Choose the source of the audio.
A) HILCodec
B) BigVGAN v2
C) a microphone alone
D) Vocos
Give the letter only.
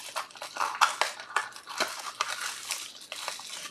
C